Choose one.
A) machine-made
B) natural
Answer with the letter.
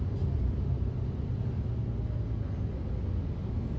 B